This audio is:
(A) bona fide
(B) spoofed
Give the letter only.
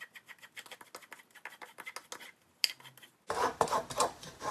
A